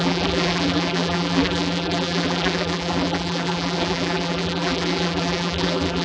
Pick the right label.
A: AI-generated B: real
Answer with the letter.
A